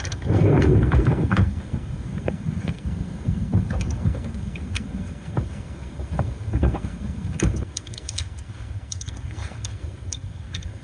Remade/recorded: remade